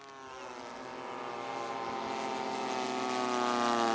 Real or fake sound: real